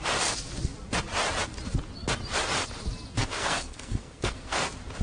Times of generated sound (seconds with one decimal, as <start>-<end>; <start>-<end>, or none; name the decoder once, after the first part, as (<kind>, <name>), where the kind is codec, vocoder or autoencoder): 3.2-4.6 (codec, SNAC)